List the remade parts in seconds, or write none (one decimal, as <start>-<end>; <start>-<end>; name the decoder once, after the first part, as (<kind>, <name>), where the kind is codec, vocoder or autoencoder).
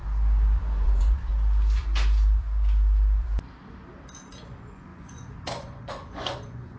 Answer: 0.6-1.3 (vocoder, Vocos); 4.4-6.8